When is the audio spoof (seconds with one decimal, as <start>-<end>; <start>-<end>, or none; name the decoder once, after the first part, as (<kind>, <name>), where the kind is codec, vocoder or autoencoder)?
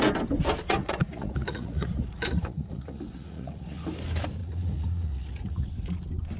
0.8-3.8 (vocoder, Vocos); 4.4-5.7